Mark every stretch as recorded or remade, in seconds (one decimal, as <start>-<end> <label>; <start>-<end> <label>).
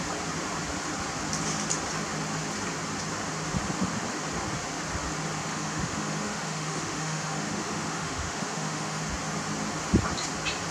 0.0-5.4 recorded; 5.4-9.0 remade; 9.0-10.7 recorded